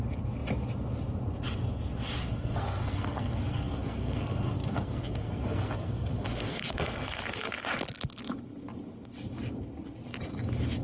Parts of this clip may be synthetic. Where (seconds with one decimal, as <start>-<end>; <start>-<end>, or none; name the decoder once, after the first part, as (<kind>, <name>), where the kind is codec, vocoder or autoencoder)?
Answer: 2.3-7.2 (codec, SNAC)